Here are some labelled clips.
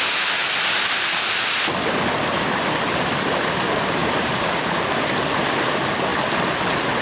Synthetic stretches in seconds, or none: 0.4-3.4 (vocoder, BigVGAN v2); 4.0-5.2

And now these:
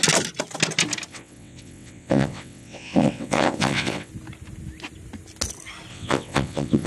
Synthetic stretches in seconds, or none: 1.1-4.1 (vocoder, WaveNeXt); 5.9-6.9